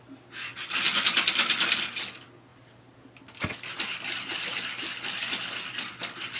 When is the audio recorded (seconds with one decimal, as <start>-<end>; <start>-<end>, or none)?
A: 0.0-6.4